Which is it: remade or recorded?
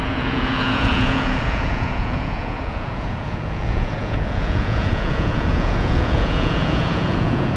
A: remade